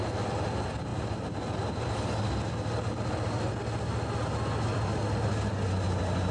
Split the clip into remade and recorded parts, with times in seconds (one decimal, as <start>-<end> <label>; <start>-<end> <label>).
0.0-0.9 recorded; 0.9-3.4 remade; 3.4-4.7 recorded; 4.7-5.3 remade; 5.3-6.3 recorded